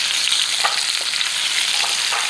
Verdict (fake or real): real